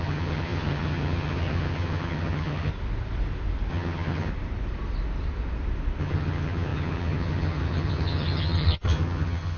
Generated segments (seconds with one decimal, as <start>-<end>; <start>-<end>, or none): 0.0-2.7; 3.7-4.3; 6.0-9.6